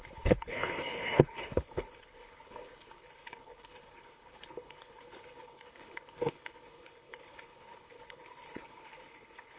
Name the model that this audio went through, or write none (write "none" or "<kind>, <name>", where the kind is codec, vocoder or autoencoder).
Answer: codec, HILCodec